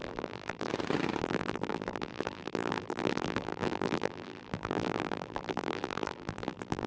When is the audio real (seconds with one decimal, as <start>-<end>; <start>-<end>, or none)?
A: 0.7-1.2